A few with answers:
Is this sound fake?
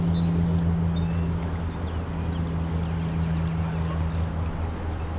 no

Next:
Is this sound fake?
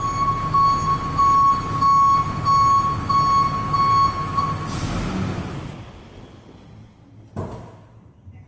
no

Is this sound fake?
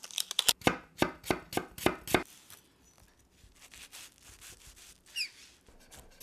no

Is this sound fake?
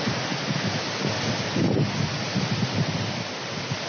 no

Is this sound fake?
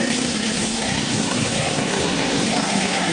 yes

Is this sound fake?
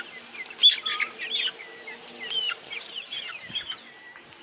no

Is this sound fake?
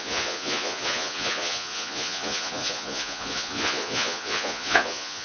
yes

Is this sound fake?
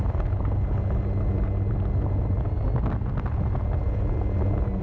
no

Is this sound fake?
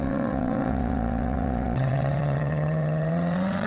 yes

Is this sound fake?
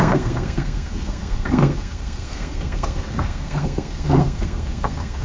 yes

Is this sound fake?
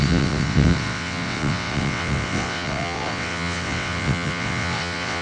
yes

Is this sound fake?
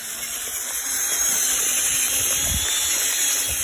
no